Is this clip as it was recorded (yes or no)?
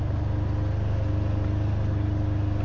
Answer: yes